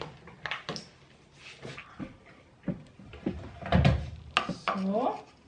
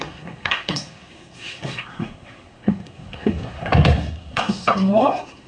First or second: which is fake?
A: second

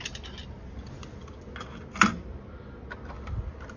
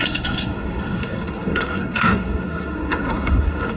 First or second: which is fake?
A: second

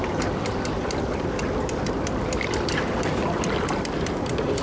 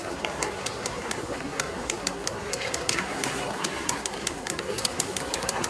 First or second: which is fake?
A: second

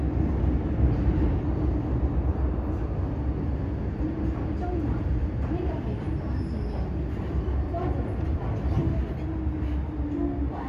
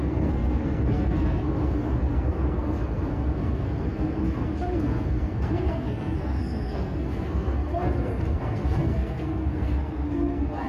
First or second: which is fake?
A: second